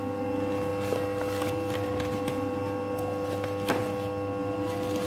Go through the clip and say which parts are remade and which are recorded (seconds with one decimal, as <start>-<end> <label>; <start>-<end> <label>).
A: 0.0-5.1 recorded